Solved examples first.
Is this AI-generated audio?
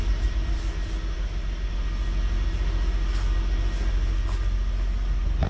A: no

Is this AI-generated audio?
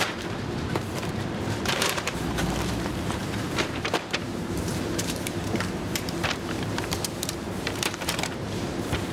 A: yes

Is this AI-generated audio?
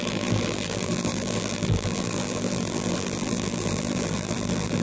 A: yes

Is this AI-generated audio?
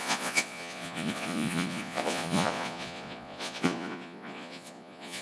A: yes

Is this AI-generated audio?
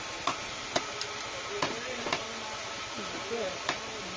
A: no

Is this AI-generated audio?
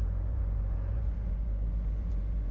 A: yes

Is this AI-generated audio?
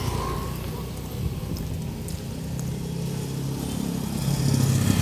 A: no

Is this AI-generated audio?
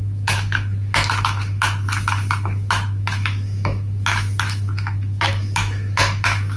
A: yes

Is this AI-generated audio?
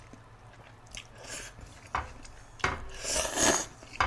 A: no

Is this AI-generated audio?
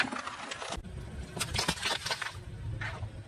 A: no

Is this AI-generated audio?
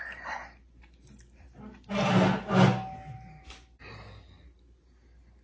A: no